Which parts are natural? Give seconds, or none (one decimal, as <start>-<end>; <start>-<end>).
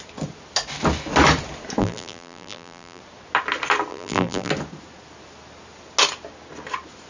0.0-1.8; 3.0-3.9; 4.5-7.1